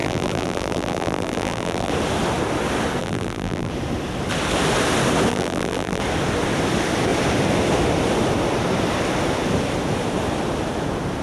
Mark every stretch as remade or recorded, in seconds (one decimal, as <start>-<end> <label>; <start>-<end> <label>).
0.0-1.9 remade; 1.9-3.0 recorded; 3.0-3.7 remade; 3.7-5.3 recorded; 5.3-6.0 remade; 6.0-11.2 recorded